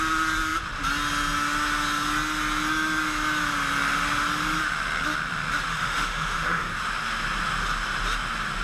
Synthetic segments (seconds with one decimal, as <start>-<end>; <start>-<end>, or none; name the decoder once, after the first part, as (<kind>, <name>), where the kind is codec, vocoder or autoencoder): 5.7-6.7 (autoencoder, DAC-VAE)

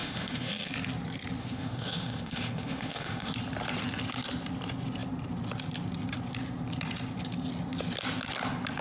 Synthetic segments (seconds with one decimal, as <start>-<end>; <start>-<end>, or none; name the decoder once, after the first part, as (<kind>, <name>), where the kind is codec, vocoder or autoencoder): 0.0-0.7 (autoencoder, DAC-VAE); 1.4-3.3

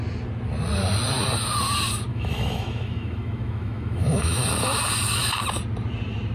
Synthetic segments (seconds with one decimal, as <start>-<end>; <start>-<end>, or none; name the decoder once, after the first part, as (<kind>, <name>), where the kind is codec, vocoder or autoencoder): 2.1-4.5 (autoencoder, DAC-VAE)